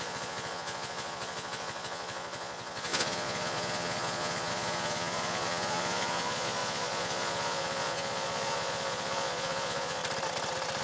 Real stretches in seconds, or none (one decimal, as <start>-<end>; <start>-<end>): 10.0-10.8